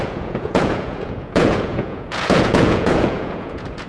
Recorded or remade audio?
remade